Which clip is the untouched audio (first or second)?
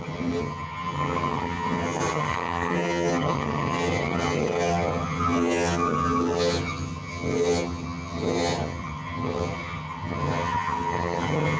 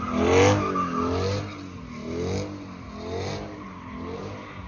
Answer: second